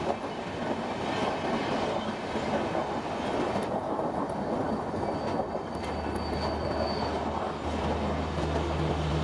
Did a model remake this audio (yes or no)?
no